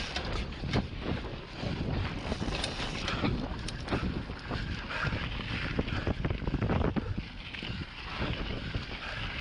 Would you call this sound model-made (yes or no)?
no